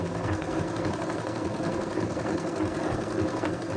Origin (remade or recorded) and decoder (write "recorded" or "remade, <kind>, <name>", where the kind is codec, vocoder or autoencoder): remade, codec, SNAC